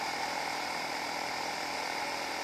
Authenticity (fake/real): fake